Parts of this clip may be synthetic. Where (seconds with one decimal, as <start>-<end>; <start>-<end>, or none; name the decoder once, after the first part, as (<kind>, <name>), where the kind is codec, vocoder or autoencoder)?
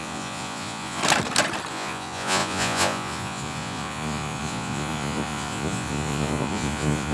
0.0-1.0 (vocoder, Vocos); 1.7-7.1